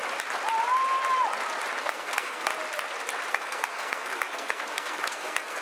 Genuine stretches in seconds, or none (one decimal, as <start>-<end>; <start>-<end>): 0.0-1.8; 2.5-3.3